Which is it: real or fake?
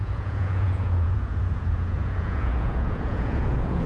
fake